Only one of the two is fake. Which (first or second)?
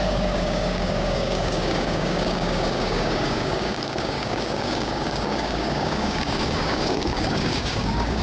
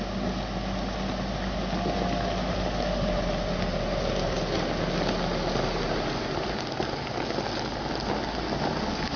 first